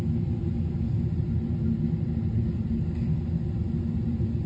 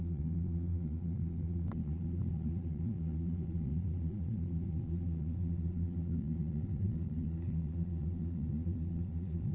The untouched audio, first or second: first